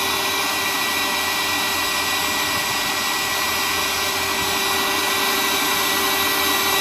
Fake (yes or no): no